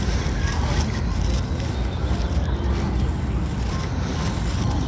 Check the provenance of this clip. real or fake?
real